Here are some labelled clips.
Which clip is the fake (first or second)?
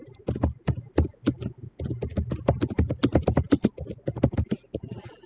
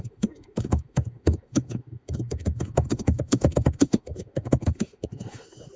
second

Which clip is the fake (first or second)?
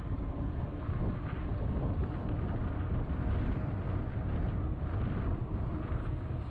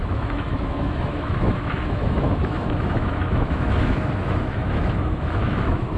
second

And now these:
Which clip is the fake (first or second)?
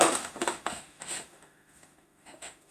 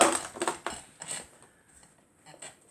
first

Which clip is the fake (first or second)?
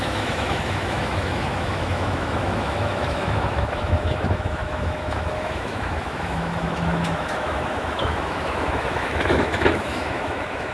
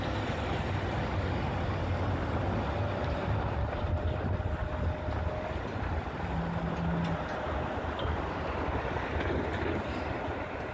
first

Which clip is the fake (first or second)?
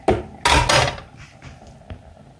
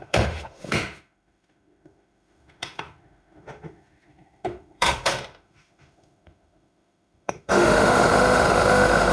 second